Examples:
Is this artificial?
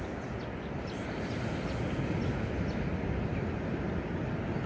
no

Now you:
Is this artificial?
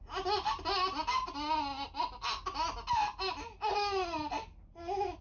no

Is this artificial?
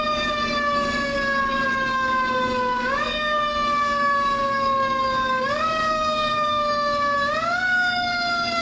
yes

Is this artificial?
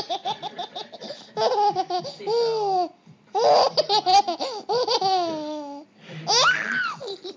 no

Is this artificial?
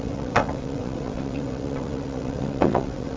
yes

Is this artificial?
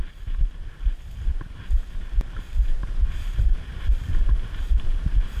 yes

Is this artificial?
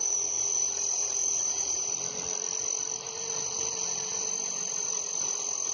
no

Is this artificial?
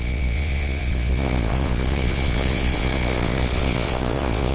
yes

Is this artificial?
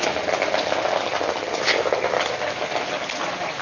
no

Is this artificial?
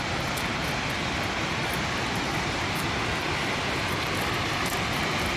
no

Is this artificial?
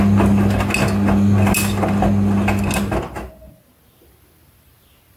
no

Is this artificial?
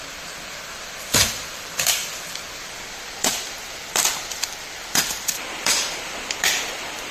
yes